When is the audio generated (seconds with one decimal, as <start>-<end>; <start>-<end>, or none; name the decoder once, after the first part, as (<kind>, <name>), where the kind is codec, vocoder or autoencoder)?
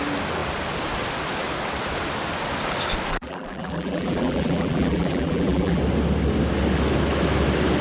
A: 3.1-5.8 (vocoder, BigVGAN v2)